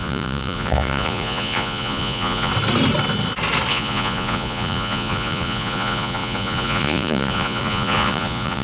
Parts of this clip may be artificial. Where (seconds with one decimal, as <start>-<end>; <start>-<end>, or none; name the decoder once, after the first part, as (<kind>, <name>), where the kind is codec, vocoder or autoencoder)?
0.0-2.5 (vocoder, Vocos); 3.7-8.6

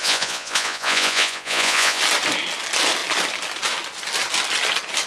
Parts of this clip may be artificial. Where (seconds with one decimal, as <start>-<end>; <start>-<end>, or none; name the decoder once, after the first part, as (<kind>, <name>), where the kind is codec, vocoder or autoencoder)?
0.0-2.0 (vocoder, Vocos)

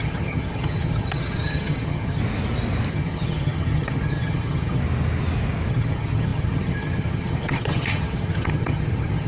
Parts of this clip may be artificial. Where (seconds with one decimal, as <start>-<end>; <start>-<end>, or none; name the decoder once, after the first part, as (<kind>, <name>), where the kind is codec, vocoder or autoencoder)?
0.0-2.2 (vocoder, HiFi-GAN); 2.9-4.8; 5.7-9.3

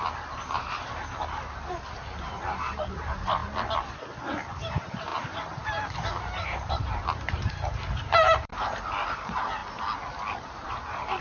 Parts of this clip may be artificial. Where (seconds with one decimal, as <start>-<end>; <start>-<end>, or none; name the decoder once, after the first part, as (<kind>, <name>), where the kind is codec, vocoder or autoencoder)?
0.0-3.4 (vocoder, BigVGAN v2); 4.6-9.6; 10.5-11.2

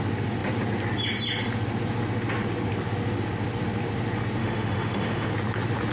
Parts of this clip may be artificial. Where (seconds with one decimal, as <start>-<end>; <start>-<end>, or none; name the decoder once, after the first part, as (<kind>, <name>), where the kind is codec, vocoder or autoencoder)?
4.4-5.3 (autoencoder, DAC-VAE)

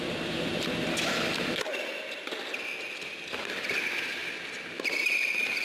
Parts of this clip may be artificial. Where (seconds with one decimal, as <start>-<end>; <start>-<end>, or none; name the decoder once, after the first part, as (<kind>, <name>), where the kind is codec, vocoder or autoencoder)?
none